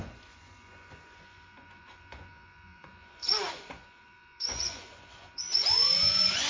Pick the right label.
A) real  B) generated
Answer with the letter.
B